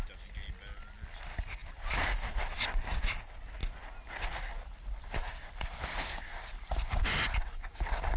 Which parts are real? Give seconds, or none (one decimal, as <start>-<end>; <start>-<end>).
0.0-8.2